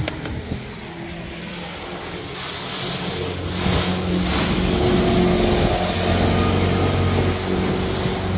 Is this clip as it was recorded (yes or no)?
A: yes